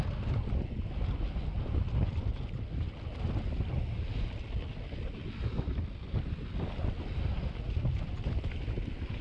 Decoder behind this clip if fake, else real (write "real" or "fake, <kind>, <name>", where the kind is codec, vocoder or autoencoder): real